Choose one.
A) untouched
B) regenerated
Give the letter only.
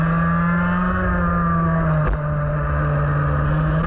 A